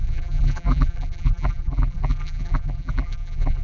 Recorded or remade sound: remade